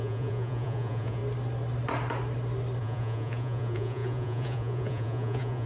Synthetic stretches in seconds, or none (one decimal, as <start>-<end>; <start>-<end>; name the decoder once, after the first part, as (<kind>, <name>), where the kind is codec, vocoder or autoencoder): 0.0-1.2 (vocoder, Vocos); 2.8-5.7